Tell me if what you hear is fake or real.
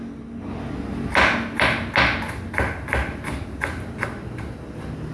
real